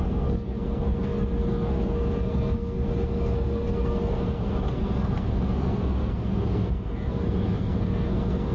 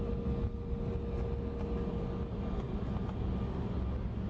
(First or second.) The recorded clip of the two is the second